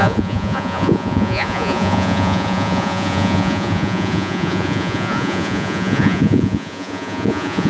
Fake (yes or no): yes